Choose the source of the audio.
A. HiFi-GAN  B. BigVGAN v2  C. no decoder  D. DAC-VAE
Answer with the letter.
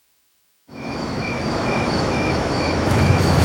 D